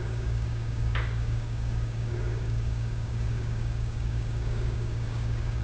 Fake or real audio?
fake